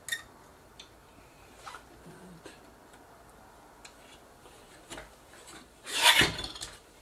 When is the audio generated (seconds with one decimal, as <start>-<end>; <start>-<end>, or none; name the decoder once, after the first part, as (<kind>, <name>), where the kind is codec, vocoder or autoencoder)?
0.5-1.9 (vocoder, BigVGAN v2)